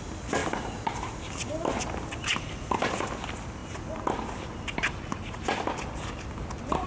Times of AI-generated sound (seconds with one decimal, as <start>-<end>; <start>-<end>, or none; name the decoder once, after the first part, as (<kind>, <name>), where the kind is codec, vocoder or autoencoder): none